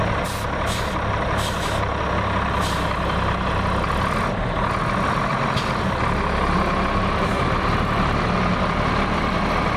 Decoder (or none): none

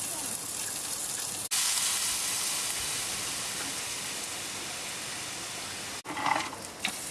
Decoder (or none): none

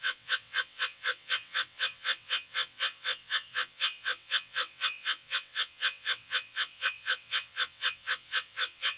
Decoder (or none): vocoder, WaveNeXt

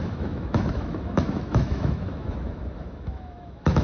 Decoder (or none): autoencoder, DAC-VAE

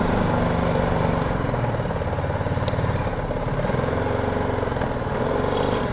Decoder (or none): none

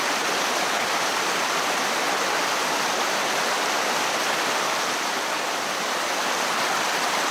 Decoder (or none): none